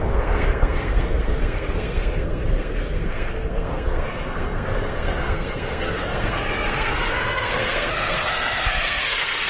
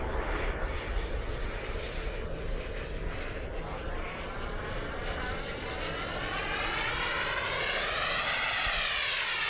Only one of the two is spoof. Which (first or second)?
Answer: first